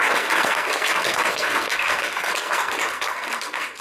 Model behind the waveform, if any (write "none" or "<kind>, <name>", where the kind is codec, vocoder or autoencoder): codec, SNAC